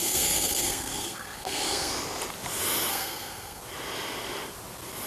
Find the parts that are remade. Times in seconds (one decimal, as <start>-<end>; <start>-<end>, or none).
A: 0.0-1.9; 2.9-3.6

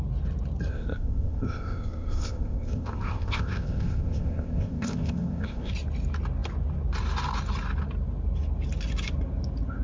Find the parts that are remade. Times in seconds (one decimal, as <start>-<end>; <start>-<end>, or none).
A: 0.7-5.7